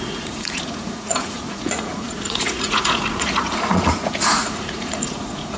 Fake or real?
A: fake